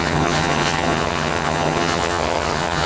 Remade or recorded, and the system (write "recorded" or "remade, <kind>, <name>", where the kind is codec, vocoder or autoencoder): remade, vocoder, HiFi-GAN